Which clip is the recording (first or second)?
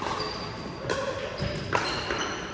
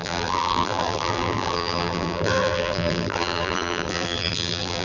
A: first